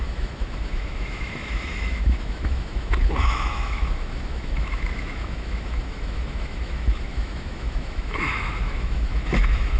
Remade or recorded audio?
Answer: remade